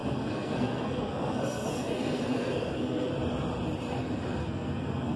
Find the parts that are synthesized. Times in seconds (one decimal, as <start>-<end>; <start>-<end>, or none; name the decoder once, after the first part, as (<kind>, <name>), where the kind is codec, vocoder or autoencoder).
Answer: 0.0-3.1 (codec, SNAC); 4.4-5.2